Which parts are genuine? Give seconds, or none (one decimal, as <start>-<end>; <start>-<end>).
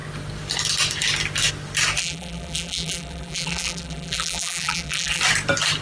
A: 0.0-2.0; 5.2-5.8